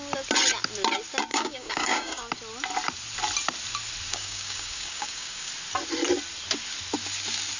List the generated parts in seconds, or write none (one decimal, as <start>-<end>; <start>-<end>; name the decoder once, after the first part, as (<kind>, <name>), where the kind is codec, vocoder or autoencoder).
1.3-2.2 (codec, DAC); 4.1-5.5